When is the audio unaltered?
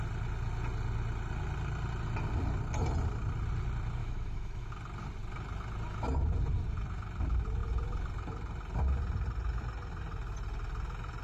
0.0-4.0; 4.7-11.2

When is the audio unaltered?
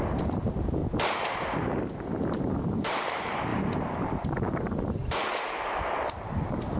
0.8-1.8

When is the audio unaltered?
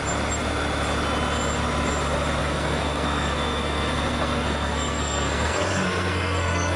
0.0-2.4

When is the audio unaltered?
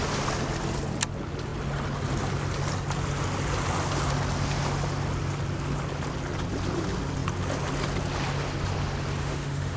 0.0-9.2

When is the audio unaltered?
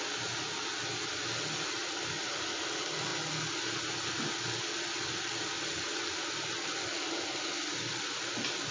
0.0-8.7